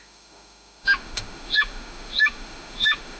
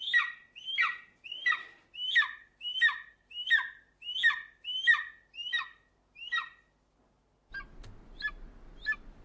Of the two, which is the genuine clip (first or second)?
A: second